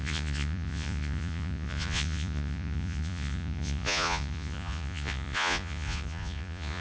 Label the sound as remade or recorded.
remade